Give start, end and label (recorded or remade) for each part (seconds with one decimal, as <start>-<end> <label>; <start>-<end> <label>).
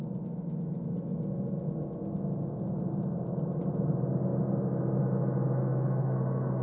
0.0-5.6 recorded; 5.6-6.6 remade